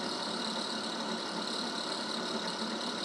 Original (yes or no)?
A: yes